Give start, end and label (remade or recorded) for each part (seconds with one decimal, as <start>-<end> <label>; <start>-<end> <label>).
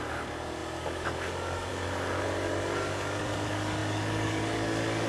0.0-5.1 remade